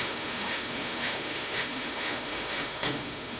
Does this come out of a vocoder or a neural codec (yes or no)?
yes